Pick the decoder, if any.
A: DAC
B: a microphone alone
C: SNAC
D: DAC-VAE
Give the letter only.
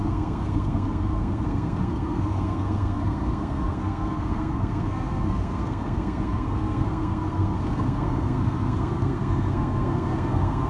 C